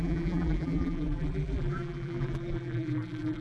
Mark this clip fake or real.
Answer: fake